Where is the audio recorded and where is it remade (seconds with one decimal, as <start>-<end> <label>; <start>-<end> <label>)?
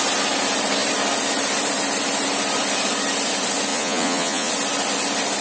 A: 0.0-3.7 recorded; 3.7-4.5 remade; 4.5-5.4 recorded